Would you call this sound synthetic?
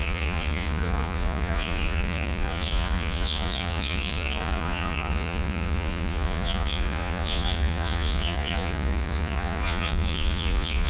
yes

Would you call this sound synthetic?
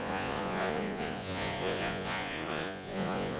yes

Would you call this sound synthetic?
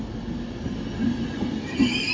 no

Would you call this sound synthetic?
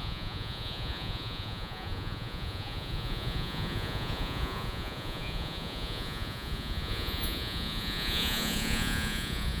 yes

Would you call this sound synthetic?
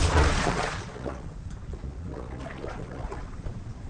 yes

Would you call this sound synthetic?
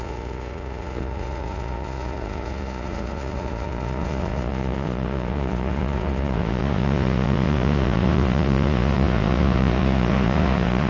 yes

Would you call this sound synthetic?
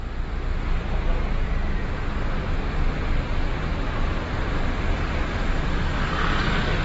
no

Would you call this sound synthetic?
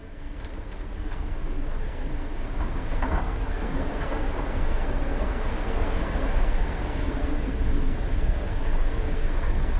yes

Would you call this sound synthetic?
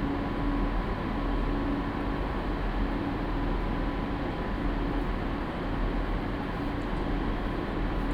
no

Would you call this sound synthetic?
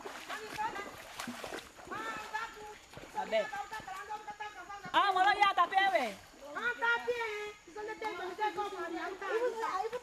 yes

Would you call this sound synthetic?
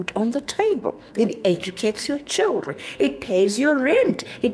yes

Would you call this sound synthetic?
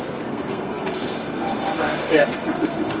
yes